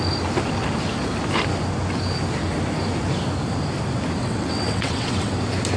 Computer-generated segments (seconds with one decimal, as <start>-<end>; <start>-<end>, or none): 4.2-5.3